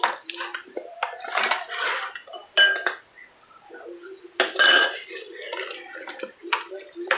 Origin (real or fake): real